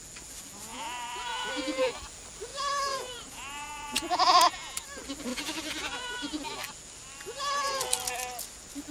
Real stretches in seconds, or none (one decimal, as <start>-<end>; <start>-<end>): 0.0-0.7; 1.9-2.5; 4.8-5.3; 6.4-8.9